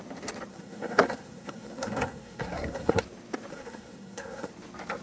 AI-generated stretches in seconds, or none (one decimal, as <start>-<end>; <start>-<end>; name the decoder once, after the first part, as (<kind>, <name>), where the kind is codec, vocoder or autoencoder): 0.5-3.0 (codec, SNAC); 3.5-4.5